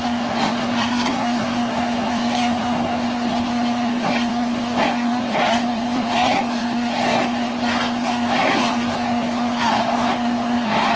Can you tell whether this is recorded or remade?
remade